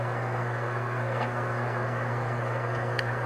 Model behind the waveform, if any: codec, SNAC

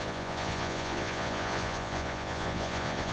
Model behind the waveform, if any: vocoder, Vocos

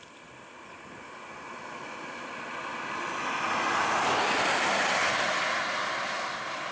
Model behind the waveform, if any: none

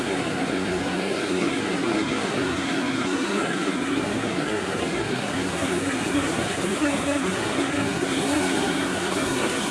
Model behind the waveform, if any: codec, SNAC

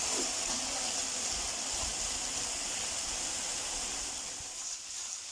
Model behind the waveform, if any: none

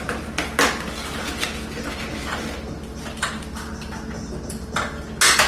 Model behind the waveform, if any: none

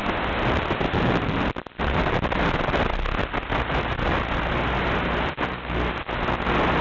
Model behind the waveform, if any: none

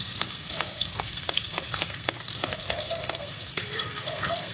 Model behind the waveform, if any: codec, SNAC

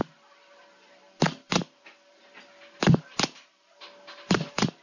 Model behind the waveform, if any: none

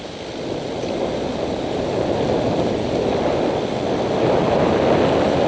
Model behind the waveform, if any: none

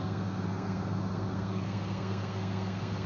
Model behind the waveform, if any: codec, SNAC